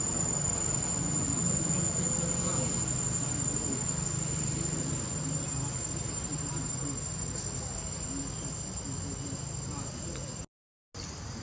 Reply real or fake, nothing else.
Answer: real